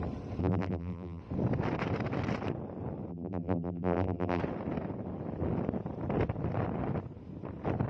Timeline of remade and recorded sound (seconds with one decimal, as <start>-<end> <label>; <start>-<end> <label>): 0.0-0.4 recorded; 0.4-1.2 remade; 1.2-3.1 recorded; 3.1-4.4 remade; 4.4-7.9 recorded